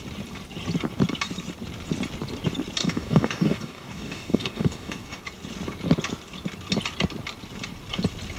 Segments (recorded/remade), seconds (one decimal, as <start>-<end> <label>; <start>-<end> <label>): 0.0-2.8 recorded; 2.8-5.2 remade; 5.2-8.4 recorded